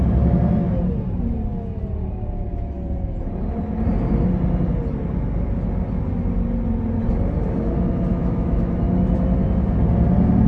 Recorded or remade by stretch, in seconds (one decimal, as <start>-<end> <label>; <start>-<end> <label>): 0.0-8.1 recorded; 8.1-8.8 remade; 8.8-10.5 recorded